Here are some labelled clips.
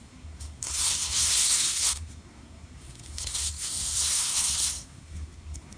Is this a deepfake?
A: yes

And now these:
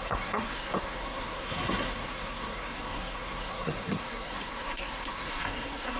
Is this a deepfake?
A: yes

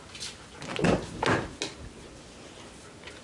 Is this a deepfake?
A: no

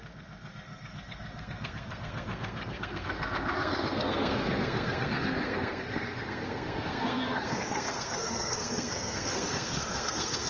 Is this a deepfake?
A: yes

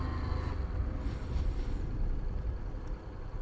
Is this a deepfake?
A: no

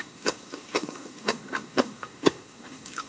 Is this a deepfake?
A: yes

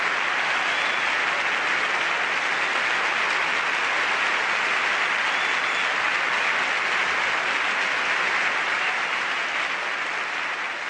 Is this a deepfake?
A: no